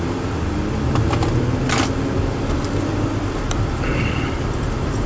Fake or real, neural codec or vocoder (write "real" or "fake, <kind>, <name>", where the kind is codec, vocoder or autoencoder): real